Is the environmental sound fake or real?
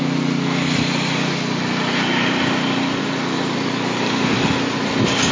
real